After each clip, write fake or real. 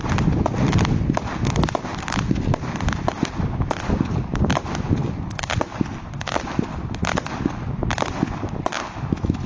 real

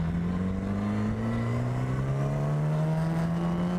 real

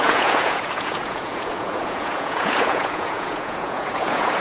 fake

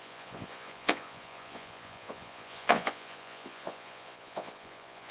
fake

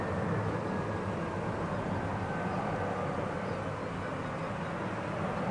real